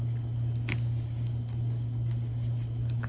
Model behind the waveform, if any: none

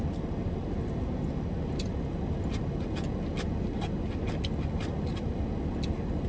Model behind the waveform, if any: none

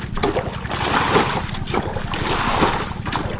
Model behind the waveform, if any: none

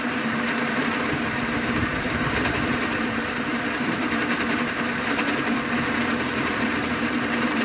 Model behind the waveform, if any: vocoder, BigVGAN v2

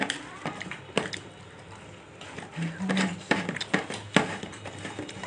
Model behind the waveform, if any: none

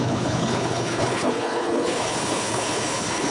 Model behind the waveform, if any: codec, HILCodec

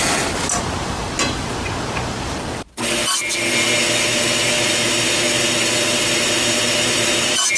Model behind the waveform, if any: none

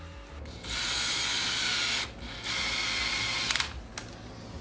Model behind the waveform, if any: none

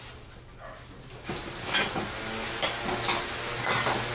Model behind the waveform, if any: none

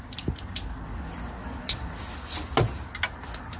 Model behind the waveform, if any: none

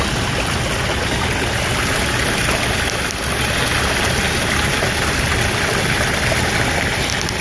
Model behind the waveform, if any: none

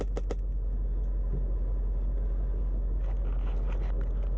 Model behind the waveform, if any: none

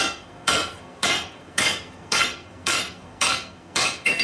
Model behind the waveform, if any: codec, SNAC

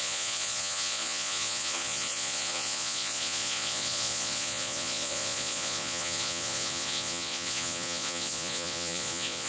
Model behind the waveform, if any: vocoder, Vocos